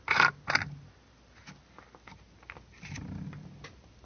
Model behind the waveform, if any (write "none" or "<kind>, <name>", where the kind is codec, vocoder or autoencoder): none